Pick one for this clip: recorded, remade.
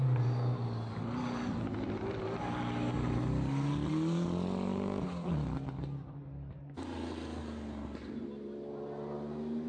recorded